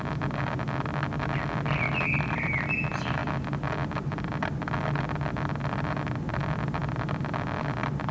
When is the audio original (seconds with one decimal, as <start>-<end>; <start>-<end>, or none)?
0.0-8.1